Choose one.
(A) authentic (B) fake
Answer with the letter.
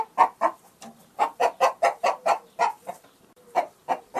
B